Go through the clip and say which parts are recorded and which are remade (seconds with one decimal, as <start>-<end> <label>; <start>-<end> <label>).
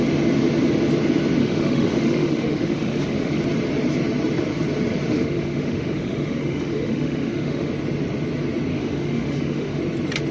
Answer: 0.0-1.4 recorded; 1.4-3.4 remade; 3.4-5.1 recorded; 5.1-7.7 remade; 7.7-8.7 recorded; 8.7-9.8 remade; 9.8-10.3 recorded